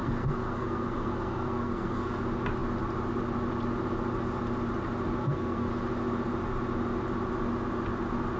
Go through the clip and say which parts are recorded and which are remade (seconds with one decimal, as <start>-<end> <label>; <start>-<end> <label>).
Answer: 0.0-2.2 remade; 2.2-5.2 recorded; 5.2-5.7 remade; 5.7-8.4 recorded